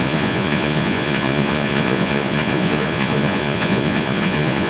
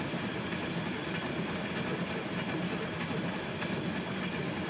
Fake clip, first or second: first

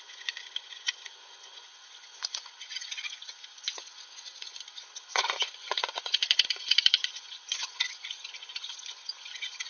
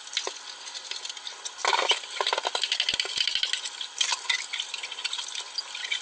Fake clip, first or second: first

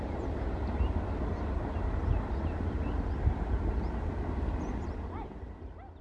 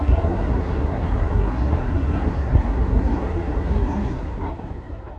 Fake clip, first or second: second